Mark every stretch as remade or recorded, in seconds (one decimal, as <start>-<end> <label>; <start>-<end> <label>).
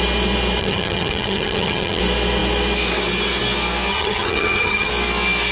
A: 0.0-0.6 recorded; 0.6-2.0 remade; 2.0-3.9 recorded; 3.9-4.9 remade; 4.9-5.5 recorded